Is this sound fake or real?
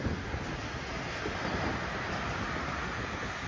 real